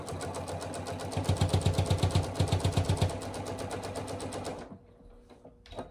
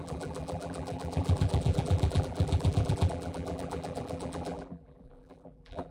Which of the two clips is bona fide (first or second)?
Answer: first